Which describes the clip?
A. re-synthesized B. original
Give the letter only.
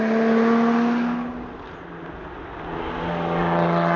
B